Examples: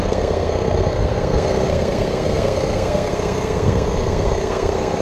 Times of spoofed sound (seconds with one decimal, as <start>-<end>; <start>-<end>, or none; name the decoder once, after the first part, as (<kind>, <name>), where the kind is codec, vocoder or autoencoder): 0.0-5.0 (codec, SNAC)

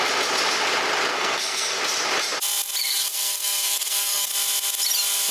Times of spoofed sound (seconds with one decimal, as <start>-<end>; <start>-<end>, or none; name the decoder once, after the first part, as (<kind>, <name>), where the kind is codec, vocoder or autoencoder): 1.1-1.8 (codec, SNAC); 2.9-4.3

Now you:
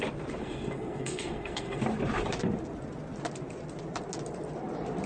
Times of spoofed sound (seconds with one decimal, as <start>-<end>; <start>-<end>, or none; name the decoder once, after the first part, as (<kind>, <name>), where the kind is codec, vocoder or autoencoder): 0.4-1.8 (codec, SNAC)

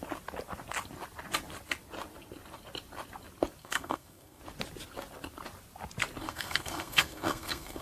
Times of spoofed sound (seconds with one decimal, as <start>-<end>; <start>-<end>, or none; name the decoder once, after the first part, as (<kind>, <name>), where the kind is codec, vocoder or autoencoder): 3.6-4.4 (codec, SNAC); 6.2-7.8